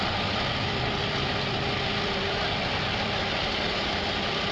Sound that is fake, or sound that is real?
real